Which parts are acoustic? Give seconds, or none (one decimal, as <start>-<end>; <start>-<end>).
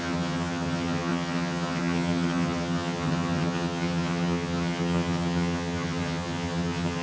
none